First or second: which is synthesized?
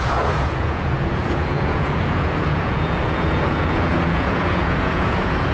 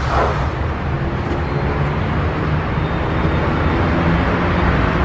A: first